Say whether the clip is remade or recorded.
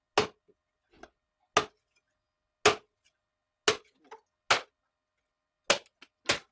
recorded